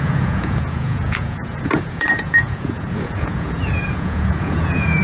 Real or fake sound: fake